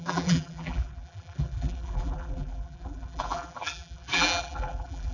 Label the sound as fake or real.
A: fake